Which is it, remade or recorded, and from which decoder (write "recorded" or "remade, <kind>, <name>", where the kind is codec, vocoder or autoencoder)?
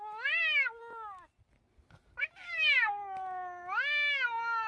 recorded